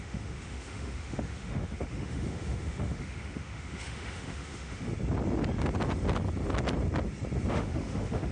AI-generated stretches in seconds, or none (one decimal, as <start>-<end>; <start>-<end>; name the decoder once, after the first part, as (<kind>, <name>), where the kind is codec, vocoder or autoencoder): 0.0-4.9 (autoencoder, DAC-VAE); 7.5-8.3